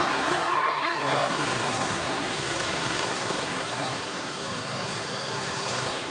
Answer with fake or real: fake